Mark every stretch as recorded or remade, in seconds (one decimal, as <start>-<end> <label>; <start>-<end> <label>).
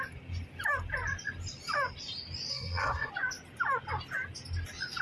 0.0-2.5 recorded; 2.5-3.1 remade; 3.1-5.0 recorded